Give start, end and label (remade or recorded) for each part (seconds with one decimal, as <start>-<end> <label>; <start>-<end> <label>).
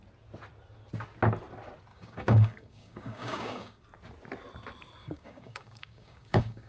0.0-1.9 recorded; 1.9-3.8 remade; 3.8-5.0 recorded; 5.0-6.7 remade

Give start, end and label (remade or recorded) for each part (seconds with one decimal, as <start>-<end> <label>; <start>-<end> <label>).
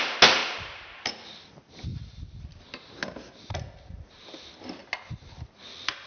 0.0-0.4 recorded; 0.4-0.9 remade; 0.9-1.9 recorded; 1.9-2.6 remade; 2.6-6.1 recorded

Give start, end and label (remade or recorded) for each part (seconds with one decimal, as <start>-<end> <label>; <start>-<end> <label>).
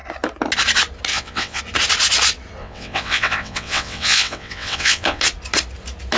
0.0-1.1 recorded; 1.1-1.6 remade; 1.6-2.6 recorded; 2.6-5.2 remade; 5.2-6.2 recorded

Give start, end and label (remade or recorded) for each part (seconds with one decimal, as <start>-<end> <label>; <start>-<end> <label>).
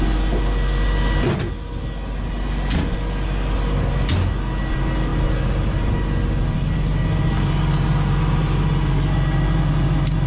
0.0-10.3 recorded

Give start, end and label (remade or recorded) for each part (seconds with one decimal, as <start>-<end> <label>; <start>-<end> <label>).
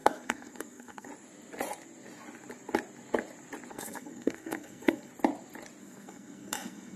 0.0-1.1 remade; 1.1-3.7 recorded; 3.7-5.1 remade; 5.1-5.8 recorded; 5.8-7.0 remade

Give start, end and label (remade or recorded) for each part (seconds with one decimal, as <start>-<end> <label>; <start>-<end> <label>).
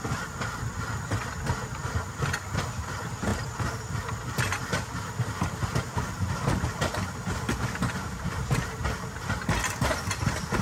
0.0-10.6 recorded